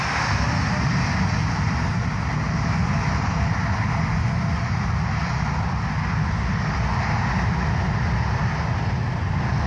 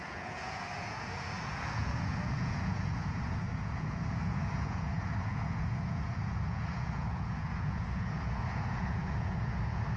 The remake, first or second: second